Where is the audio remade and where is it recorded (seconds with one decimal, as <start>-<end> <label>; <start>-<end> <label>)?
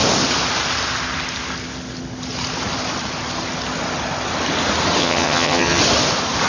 0.0-5.0 recorded; 5.0-5.8 remade; 5.8-6.5 recorded